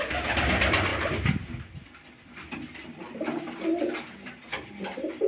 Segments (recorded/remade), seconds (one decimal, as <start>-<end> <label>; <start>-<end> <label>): 0.0-0.9 recorded; 0.9-1.5 remade; 1.5-5.3 recorded